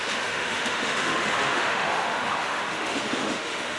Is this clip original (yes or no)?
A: no